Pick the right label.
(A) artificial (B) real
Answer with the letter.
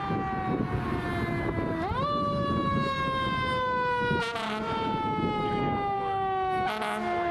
B